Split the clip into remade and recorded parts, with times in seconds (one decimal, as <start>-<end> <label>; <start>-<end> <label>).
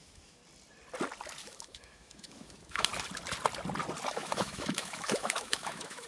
0.0-0.4 remade; 0.4-1.4 recorded; 1.4-2.9 remade; 2.9-4.1 recorded; 4.1-6.1 remade